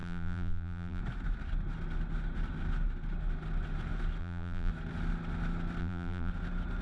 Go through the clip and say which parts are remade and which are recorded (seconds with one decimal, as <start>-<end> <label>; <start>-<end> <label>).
0.0-1.0 remade; 1.0-4.2 recorded; 4.2-4.7 remade; 4.7-5.8 recorded; 5.8-6.3 remade; 6.3-6.8 recorded